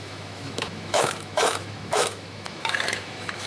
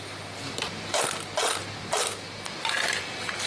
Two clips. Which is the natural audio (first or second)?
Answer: second